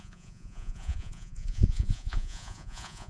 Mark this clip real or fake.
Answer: fake